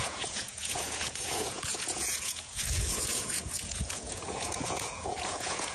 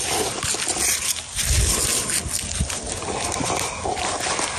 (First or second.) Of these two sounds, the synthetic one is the first